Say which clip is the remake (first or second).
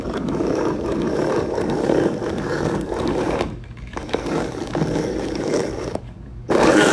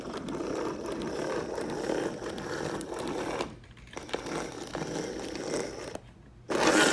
first